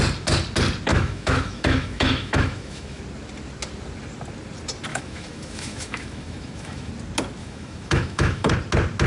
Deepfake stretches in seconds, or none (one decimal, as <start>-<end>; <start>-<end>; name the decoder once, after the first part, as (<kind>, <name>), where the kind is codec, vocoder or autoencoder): 0.9-3.0 (autoencoder, DAC-VAE); 4.9-6.9; 7.4-8.5